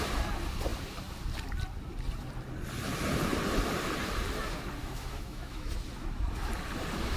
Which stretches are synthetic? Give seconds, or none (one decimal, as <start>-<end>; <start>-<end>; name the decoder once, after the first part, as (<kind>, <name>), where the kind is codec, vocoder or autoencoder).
4.8-5.7 (autoencoder, DAC-VAE)

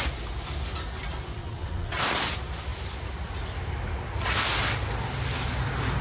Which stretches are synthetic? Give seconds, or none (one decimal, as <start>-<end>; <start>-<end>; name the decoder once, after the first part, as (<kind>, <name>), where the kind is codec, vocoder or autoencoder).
1.4-2.0 (vocoder, WaveNeXt)

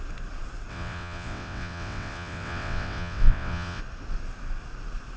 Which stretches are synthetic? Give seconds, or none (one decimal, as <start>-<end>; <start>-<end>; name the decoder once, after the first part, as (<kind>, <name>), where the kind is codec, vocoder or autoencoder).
0.7-3.8 (vocoder, WaveNeXt)

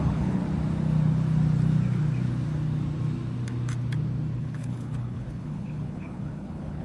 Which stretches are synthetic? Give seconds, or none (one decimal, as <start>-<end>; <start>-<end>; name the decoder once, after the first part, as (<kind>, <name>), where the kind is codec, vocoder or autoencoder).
0.0-0.4 (codec, HILCodec); 4.4-6.8